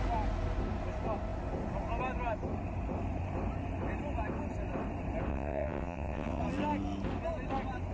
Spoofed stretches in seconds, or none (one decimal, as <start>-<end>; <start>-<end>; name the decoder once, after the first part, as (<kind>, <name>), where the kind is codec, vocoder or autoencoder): 5.3-6.4 (vocoder, WaveNeXt)